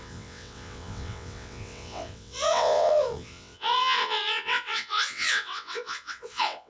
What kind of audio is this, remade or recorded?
remade